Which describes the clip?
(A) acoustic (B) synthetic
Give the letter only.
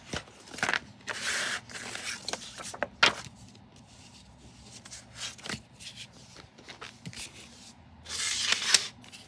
A